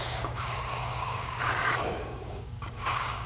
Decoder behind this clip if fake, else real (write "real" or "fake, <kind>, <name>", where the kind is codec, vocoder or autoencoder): fake, codec, DAC